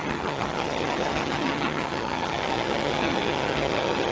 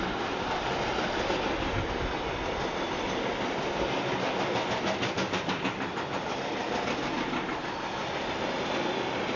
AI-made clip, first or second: first